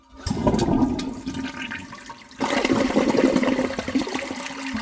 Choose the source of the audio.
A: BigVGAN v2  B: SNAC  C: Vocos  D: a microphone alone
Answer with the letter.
D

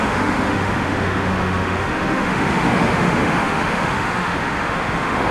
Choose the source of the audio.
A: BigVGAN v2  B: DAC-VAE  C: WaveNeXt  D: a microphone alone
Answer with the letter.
B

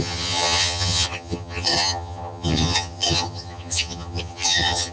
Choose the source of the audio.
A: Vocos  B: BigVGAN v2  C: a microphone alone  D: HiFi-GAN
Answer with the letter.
D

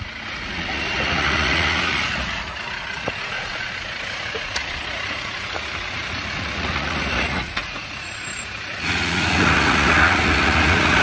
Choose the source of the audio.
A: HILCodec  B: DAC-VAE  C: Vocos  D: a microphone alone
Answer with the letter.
C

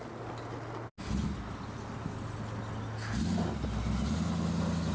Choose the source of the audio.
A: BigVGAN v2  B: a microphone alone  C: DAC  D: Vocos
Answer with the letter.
B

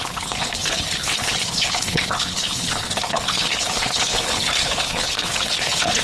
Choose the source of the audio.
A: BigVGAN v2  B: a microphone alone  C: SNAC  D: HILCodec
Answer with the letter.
D